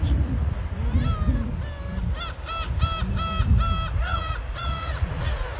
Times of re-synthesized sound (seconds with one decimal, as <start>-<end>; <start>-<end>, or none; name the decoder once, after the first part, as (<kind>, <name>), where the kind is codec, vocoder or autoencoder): 0.0-0.6 (vocoder, Vocos); 4.0-5.6